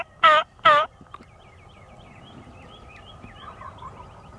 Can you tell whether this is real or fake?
fake